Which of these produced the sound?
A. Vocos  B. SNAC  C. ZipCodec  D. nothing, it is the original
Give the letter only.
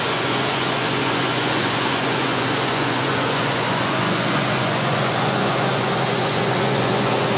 A